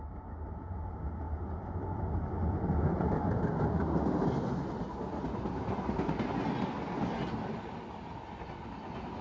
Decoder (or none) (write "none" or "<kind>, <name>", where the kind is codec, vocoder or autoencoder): none